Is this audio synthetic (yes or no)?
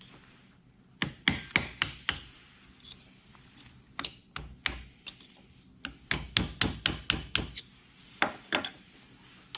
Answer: no